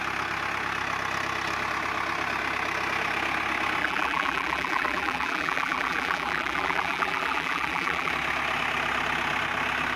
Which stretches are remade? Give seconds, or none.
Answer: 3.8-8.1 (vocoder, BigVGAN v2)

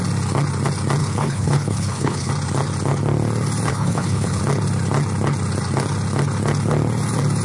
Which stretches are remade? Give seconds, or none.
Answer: 1.0-2.3 (codec, HILCodec); 3.7-4.4

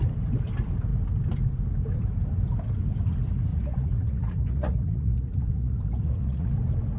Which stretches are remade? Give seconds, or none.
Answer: 3.5-6.5 (vocoder, Vocos)

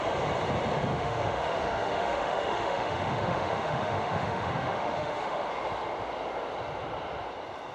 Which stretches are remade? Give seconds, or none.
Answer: 0.9-5.5 (autoencoder, DAC-VAE)